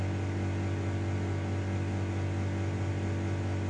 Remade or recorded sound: recorded